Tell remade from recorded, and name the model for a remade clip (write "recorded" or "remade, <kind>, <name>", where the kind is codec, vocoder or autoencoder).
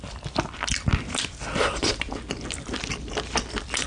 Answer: recorded